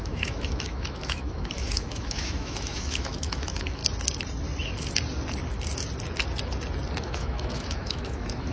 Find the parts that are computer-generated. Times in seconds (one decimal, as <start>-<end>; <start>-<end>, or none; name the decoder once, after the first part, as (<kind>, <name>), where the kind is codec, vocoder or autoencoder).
0.0-3.8 (autoencoder, DAC-VAE); 7.0-8.5